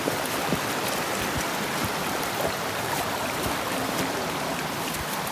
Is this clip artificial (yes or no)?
no